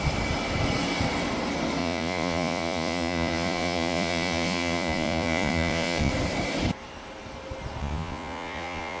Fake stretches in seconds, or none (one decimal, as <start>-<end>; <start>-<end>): 1.8-6.1; 7.8-9.0